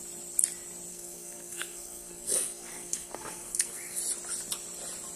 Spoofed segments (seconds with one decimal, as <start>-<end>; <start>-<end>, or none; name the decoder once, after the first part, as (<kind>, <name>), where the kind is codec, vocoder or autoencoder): 0.9-4.0 (codec, SNAC)